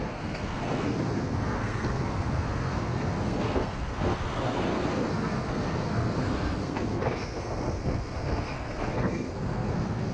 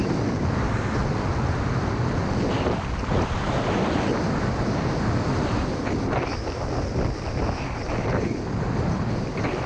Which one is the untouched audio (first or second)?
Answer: second